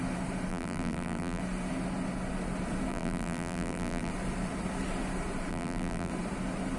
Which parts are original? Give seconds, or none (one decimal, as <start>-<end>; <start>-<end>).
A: 0.0-0.5; 1.4-2.9; 4.1-5.5; 6.1-6.8